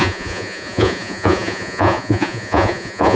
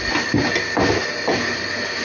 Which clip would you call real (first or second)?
second